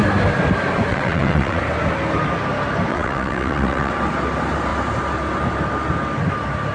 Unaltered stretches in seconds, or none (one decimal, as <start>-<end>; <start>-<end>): 0.0-0.9; 1.6-2.9; 3.9-6.7